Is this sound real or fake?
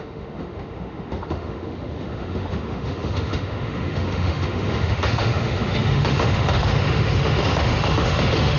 fake